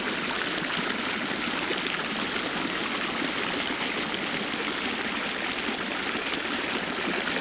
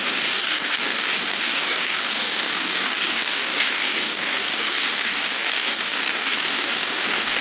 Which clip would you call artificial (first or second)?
second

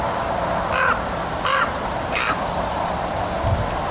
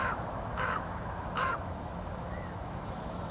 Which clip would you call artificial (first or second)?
second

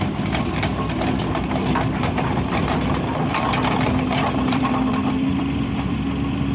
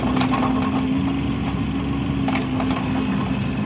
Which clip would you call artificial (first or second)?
first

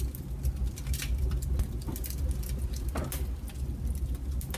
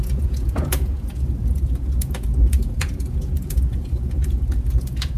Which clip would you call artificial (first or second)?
second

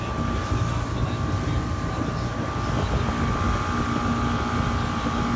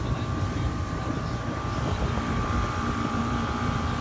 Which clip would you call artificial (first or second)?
second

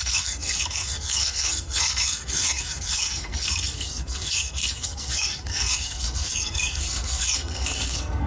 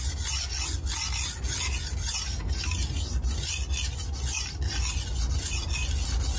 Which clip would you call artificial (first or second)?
first